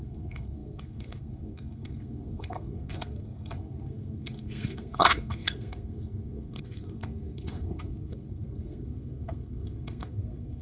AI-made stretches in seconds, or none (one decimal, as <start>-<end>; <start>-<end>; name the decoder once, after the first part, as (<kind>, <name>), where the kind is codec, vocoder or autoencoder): 0.0-10.6 (codec, SNAC)